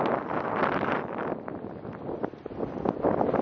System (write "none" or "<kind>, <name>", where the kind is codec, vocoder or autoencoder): none